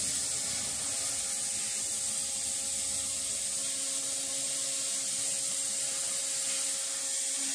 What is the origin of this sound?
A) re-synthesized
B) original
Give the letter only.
B